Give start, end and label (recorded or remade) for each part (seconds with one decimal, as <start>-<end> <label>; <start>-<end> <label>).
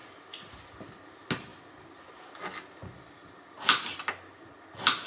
0.0-5.1 recorded